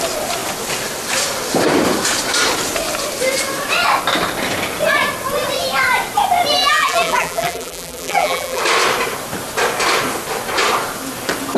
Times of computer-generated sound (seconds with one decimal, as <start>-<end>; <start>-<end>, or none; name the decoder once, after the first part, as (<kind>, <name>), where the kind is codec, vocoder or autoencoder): 6.6-8.6 (vocoder, BigVGAN v2)